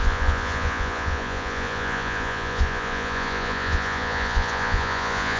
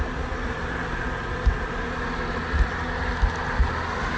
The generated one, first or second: first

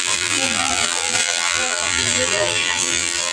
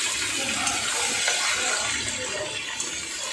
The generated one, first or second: first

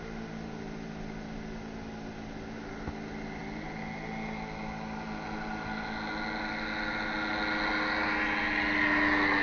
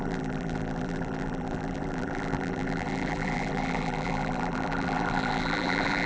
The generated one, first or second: second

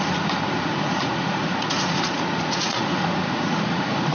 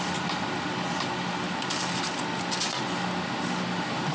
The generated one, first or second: first